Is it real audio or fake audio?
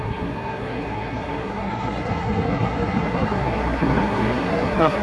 fake